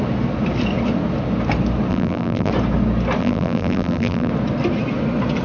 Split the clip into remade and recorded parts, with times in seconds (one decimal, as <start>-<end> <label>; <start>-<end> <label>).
0.0-1.9 recorded; 1.9-2.5 remade; 2.5-3.2 recorded; 3.2-4.3 remade; 4.3-5.4 recorded